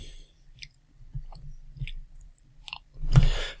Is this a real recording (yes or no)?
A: no